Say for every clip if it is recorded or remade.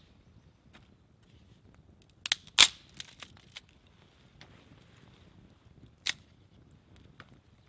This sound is recorded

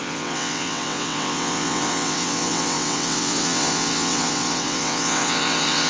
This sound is remade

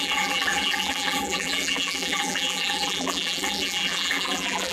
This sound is remade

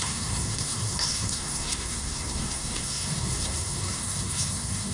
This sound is remade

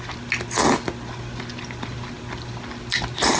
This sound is recorded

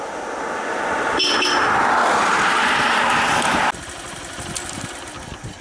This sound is recorded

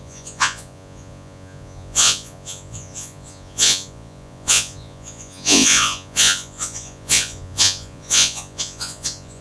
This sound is remade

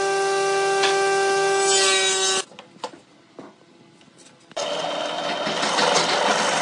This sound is recorded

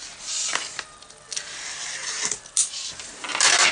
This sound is recorded